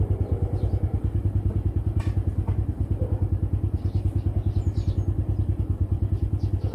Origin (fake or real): fake